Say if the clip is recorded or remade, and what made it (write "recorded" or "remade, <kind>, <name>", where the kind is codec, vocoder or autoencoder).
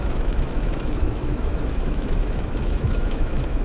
remade, autoencoder, DAC-VAE